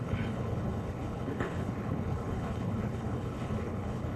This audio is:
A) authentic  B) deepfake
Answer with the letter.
B